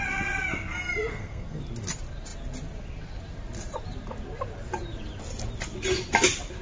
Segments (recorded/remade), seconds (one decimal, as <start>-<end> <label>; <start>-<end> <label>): 0.0-1.1 recorded; 1.1-1.6 remade; 1.6-6.6 recorded